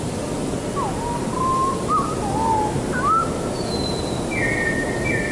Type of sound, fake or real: real